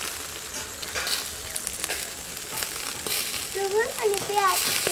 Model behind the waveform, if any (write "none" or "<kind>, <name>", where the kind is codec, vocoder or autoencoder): none